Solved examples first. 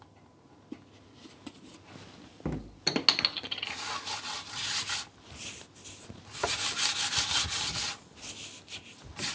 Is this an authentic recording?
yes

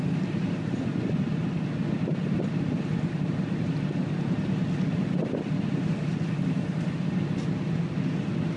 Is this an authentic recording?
yes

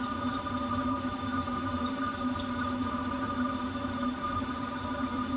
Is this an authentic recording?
no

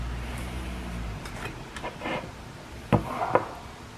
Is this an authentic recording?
yes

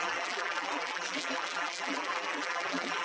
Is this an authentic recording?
no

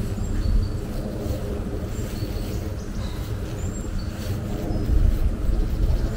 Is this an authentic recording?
yes